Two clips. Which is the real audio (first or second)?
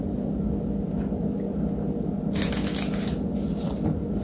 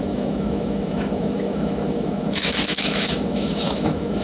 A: first